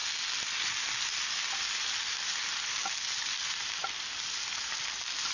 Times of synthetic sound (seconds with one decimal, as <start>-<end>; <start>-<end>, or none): 3.2-5.3